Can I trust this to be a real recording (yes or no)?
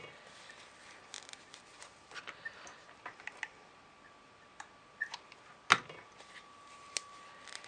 yes